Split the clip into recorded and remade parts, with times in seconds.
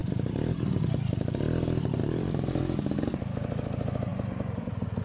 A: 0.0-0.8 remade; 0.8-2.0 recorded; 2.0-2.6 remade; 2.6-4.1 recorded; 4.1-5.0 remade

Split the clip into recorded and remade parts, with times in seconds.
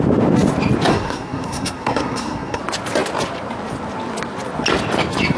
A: 0.0-0.9 recorded; 0.9-2.6 remade; 2.6-5.4 recorded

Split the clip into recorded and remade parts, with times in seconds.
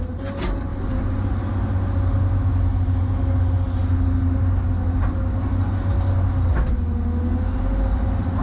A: 0.0-8.4 recorded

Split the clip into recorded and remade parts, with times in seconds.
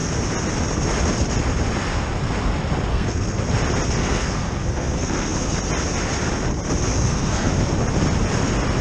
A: 0.0-2.9 recorded; 2.9-3.4 remade; 3.4-4.0 recorded; 4.0-5.5 remade; 5.5-6.9 recorded; 6.9-7.5 remade; 7.5-8.8 recorded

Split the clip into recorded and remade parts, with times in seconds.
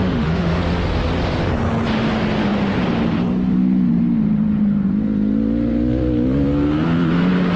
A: 0.0-0.6 remade; 0.6-7.6 recorded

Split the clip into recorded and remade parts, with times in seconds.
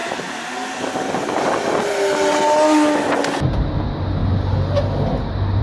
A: 0.0-5.6 recorded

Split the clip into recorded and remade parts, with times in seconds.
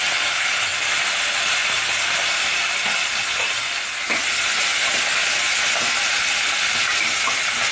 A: 0.0-0.7 recorded; 0.7-1.2 remade; 1.2-7.7 recorded